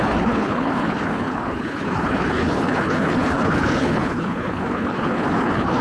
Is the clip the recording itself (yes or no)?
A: no